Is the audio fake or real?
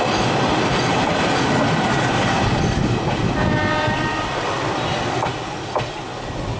real